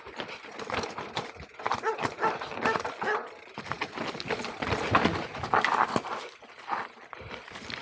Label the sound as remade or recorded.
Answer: recorded